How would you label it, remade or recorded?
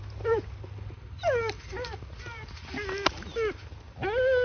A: recorded